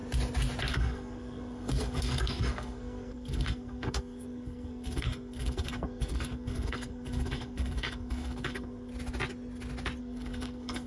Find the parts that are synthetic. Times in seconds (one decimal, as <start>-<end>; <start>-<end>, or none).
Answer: 0.7-8.9; 10.0-10.9